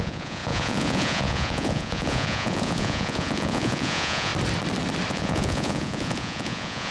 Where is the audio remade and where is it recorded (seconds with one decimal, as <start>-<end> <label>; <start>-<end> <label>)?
0.0-4.3 remade; 4.3-5.1 recorded; 5.1-6.9 remade